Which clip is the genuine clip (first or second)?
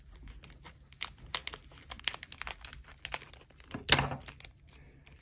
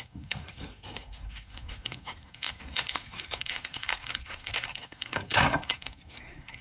first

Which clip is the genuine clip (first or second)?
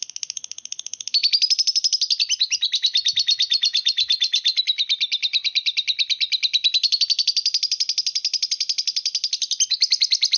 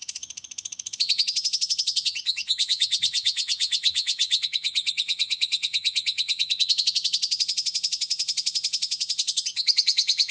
first